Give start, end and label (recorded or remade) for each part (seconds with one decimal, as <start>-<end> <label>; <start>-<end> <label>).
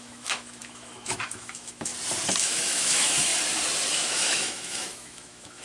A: 0.0-1.9 remade; 1.9-2.4 recorded; 2.4-3.3 remade; 3.3-3.9 recorded; 3.9-5.6 remade